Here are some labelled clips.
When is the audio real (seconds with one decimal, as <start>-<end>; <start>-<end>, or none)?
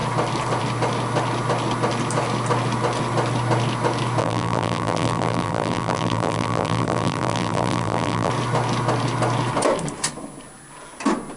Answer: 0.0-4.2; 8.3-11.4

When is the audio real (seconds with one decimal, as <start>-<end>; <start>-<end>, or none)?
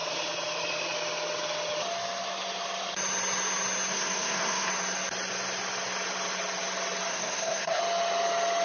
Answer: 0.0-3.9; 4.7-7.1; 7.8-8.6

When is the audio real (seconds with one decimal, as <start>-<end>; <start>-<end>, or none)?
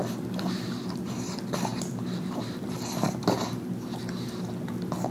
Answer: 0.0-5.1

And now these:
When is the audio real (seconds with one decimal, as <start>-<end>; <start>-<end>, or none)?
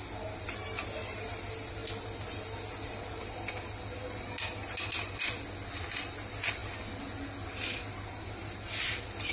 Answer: 0.0-9.3